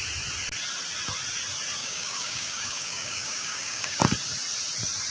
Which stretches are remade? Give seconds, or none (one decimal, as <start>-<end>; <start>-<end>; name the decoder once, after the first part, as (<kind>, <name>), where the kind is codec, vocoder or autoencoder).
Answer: 1.8-4.0 (codec, DAC)